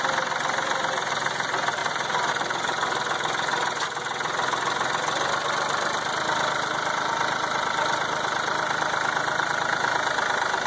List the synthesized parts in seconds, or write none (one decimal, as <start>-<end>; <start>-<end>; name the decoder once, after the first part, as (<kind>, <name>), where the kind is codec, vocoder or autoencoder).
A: none